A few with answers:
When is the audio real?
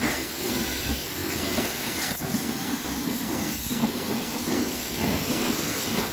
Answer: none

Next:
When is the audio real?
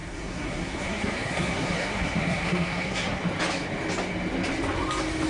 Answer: 3.2-5.3